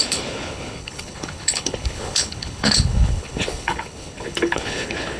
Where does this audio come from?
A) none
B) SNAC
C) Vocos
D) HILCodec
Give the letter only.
D